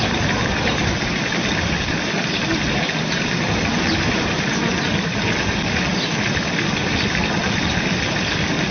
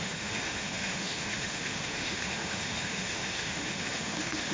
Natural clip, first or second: first